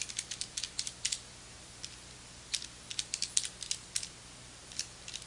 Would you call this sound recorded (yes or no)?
yes